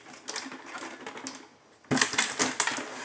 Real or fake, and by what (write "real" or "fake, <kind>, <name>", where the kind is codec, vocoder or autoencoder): real